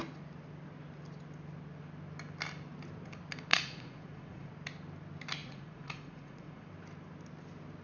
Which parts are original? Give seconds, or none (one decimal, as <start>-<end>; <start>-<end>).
0.0-3.5; 4.5-5.4; 6.7-7.8